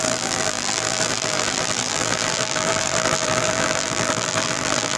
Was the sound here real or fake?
fake